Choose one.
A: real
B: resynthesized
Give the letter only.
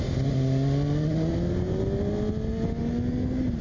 A